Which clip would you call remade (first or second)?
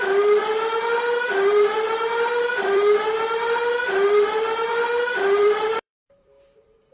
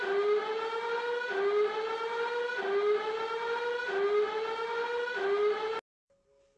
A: first